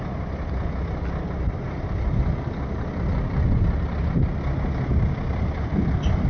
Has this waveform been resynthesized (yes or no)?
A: no